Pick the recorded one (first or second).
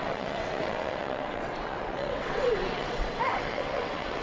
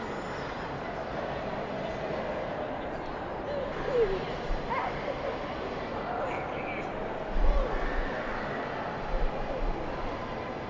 second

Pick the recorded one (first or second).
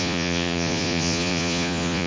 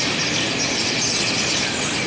second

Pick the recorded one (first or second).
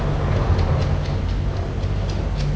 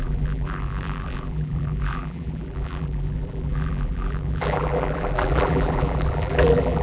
first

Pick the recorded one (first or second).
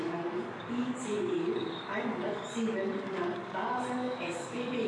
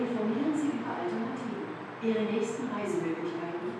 second